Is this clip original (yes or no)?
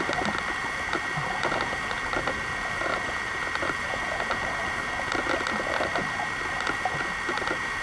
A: yes